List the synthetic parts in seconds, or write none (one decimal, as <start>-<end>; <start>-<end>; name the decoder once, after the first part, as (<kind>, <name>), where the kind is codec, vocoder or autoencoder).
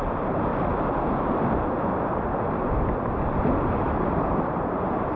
0.0-0.5 (vocoder, BigVGAN v2); 3.6-5.2